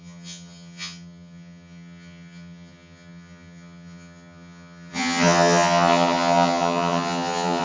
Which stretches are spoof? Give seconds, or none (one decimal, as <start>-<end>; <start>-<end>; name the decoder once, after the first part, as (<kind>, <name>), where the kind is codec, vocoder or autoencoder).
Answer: 0.0-7.6 (vocoder, HiFi-GAN)